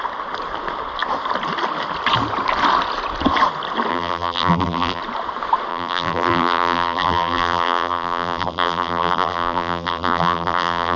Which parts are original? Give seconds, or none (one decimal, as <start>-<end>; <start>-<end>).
0.0-3.9; 5.0-5.7